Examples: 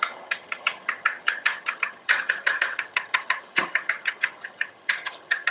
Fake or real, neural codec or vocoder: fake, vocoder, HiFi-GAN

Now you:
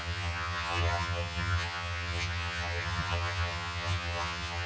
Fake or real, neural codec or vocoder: fake, vocoder, HiFi-GAN